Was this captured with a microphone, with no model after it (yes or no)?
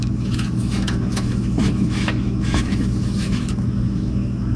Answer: no